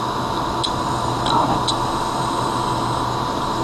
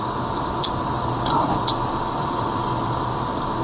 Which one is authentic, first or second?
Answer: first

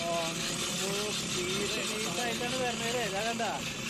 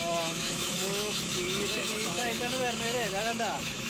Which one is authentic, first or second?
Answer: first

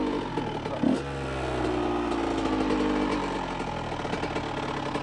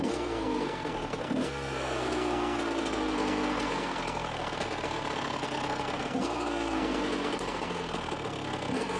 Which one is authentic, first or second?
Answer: first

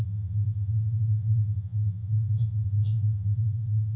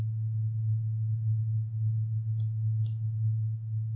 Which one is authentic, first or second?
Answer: second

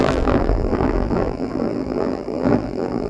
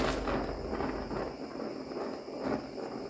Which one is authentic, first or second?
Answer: second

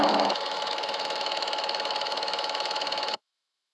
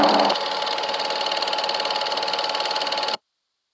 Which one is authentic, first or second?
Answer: second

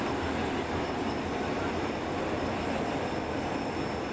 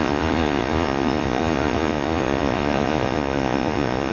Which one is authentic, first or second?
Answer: first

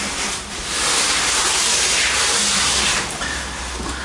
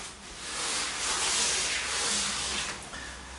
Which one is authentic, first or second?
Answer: second